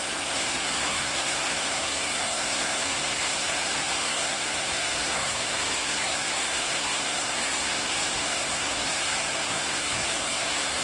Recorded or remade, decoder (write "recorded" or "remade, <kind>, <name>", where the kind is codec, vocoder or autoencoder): remade, codec, SNAC